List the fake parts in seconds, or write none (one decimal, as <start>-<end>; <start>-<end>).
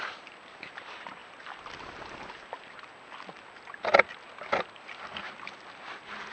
none